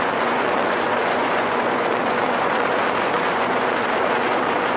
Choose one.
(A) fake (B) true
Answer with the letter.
A